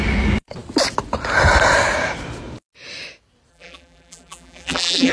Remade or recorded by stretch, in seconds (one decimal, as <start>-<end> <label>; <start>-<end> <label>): 0.0-3.5 recorded; 3.5-5.1 remade